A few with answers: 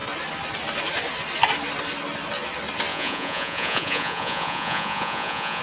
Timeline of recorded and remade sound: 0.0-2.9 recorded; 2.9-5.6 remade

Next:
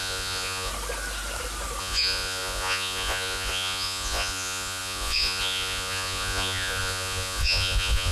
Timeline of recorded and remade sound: 0.0-0.7 remade; 0.7-1.8 recorded; 1.8-8.1 remade

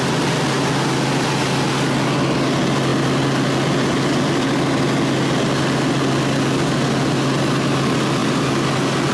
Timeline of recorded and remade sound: 0.0-9.1 recorded

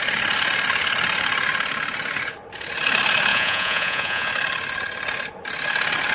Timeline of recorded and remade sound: 0.0-3.3 recorded; 3.3-4.3 remade; 4.3-6.1 recorded

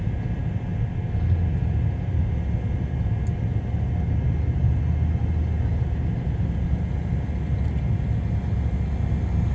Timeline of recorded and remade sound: 0.0-9.5 recorded

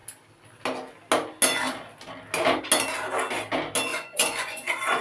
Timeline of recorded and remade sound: 0.0-3.9 recorded; 3.9-5.0 remade